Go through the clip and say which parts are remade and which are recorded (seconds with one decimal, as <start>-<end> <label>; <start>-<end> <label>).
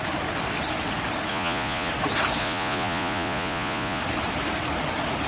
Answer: 0.0-1.3 recorded; 1.3-1.9 remade; 1.9-2.4 recorded; 2.4-4.0 remade; 4.0-5.3 recorded